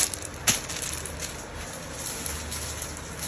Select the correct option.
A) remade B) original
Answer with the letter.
B